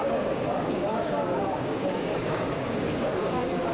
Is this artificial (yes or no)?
yes